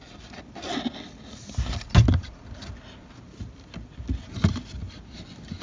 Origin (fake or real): real